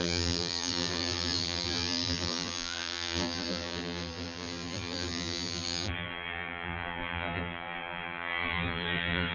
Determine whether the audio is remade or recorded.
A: remade